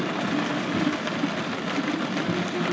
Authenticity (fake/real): real